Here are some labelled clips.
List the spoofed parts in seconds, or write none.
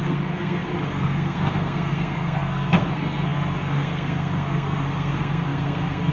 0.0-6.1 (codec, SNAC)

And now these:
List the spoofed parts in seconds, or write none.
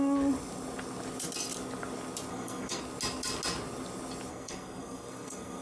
2.3-2.8 (codec, SNAC); 4.3-5.6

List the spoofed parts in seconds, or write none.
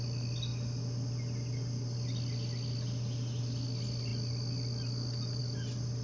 none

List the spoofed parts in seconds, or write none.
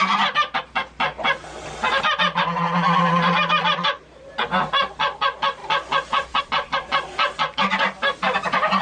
none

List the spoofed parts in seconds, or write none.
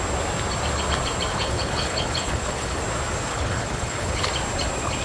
1.3-2.8 (codec, HILCodec); 3.3-4.3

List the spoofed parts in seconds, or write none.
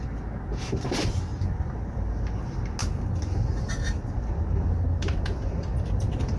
none